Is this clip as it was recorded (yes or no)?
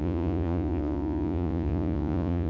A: no